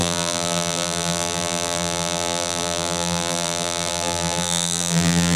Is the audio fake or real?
fake